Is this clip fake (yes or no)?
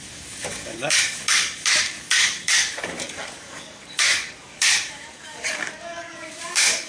yes